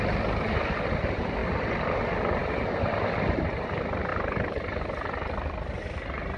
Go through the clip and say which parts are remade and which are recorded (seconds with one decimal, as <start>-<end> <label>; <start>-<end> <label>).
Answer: 0.0-1.4 recorded; 1.4-2.0 remade; 2.0-4.1 recorded; 4.1-4.8 remade; 4.8-6.4 recorded